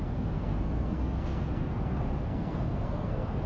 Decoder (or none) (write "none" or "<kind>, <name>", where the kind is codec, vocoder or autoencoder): codec, SNAC